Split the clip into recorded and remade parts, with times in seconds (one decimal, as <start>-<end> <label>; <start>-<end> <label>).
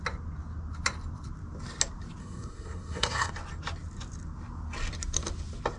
0.0-2.2 recorded; 2.2-3.3 remade; 3.3-5.8 recorded